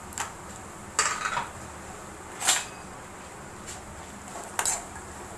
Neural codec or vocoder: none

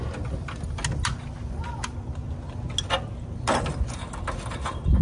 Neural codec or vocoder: none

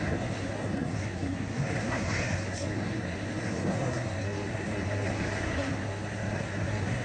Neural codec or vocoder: codec, SNAC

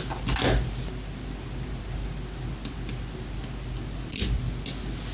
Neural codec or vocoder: none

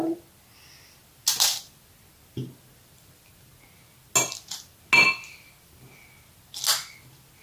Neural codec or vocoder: none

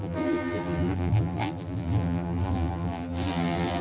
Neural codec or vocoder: vocoder, BigVGAN v2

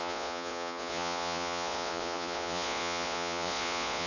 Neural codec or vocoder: vocoder, Vocos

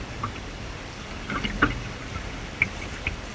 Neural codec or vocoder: none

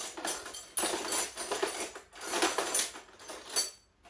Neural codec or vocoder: none